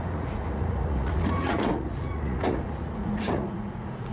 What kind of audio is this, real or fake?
fake